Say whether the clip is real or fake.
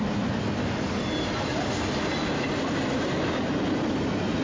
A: real